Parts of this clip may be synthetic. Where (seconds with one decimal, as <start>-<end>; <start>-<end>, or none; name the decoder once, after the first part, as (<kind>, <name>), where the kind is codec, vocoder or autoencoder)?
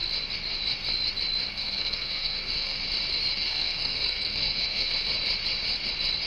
1.5-2.8 (codec, SNAC); 3.3-5.0